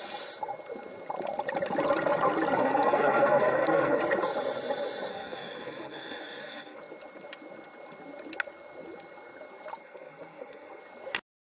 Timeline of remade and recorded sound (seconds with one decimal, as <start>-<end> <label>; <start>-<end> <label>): 0.0-2.6 recorded; 2.6-4.0 remade; 4.0-5.1 recorded; 5.1-6.8 remade; 6.8-9.8 recorded; 9.8-10.8 remade; 10.8-11.4 recorded